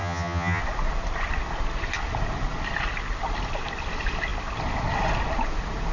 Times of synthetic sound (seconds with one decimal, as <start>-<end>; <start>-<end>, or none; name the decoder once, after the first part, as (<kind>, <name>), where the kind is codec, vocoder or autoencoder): 0.0-0.6 (vocoder, HiFi-GAN)